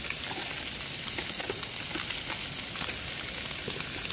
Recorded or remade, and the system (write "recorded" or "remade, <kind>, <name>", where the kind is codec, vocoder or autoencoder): recorded